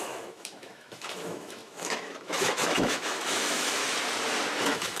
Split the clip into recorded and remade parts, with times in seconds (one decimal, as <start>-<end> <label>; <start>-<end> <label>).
0.0-3.8 remade; 3.8-4.5 recorded; 4.5-5.0 remade